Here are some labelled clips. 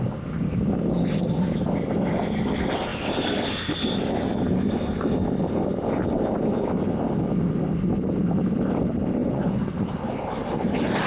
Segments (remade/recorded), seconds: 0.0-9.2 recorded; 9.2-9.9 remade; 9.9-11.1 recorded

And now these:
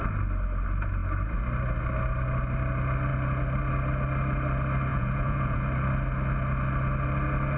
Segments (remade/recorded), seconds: 0.0-4.9 recorded; 4.9-5.6 remade; 5.6-7.6 recorded

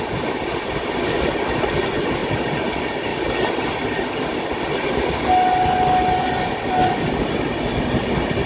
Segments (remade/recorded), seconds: 0.0-8.5 recorded

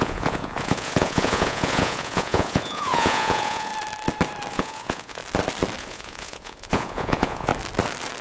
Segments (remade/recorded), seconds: 0.0-3.7 remade; 3.7-4.5 recorded; 4.5-5.2 remade; 5.2-5.8 recorded; 5.8-7.5 remade; 7.5-8.2 recorded

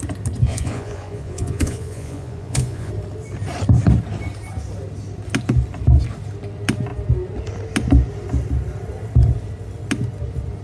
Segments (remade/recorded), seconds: 0.0-0.5 recorded; 0.5-2.9 remade; 2.9-10.6 recorded

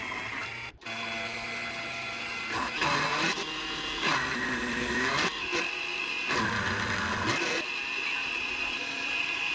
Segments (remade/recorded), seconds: 0.0-8.2 recorded; 8.2-9.5 remade